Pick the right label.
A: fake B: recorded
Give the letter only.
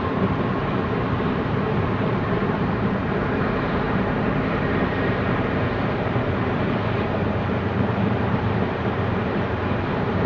A